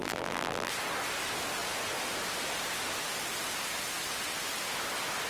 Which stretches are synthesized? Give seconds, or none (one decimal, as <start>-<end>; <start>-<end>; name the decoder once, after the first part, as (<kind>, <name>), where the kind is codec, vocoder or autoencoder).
0.0-0.7 (vocoder, BigVGAN v2)